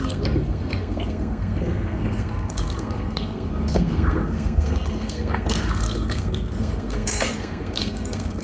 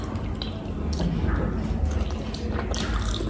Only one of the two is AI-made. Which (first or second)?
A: first